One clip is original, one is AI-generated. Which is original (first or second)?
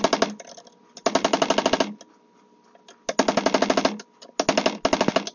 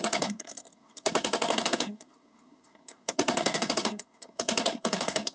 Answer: first